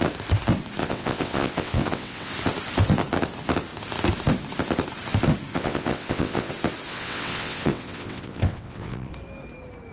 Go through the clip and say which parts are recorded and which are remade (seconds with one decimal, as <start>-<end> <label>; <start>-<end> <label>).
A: 0.0-0.8 recorded; 0.8-2.3 remade; 2.3-5.5 recorded; 5.5-6.5 remade; 6.5-6.9 recorded; 6.9-9.1 remade; 9.1-9.9 recorded